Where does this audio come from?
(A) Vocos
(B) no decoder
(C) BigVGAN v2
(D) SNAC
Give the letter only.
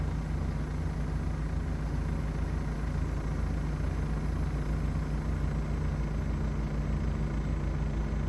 B